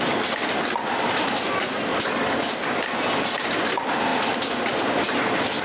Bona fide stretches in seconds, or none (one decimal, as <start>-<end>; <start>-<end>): none